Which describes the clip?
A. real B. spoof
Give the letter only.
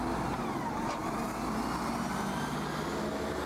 A